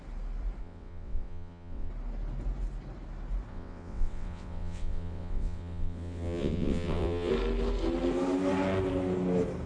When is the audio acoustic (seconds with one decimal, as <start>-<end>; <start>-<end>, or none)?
0.0-0.6; 1.9-3.5; 7.3-9.7